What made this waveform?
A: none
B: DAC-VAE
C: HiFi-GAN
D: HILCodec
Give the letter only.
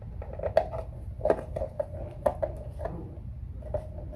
A